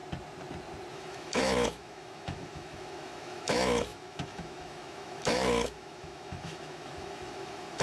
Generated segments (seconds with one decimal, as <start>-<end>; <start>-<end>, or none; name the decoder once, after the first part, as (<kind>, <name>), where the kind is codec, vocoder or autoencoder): 0.9-7.8 (autoencoder, DAC-VAE)